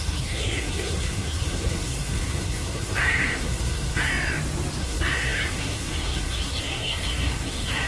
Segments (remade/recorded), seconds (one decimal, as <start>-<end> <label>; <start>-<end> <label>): 0.0-4.1 remade; 4.1-4.8 recorded; 4.8-7.9 remade